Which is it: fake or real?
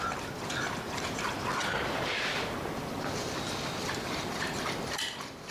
fake